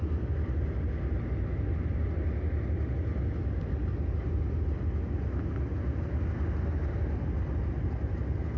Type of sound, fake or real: real